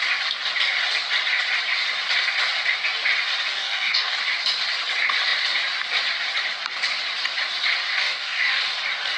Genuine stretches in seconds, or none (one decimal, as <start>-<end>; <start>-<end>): 0.0-3.5; 4.2-7.9; 8.6-9.2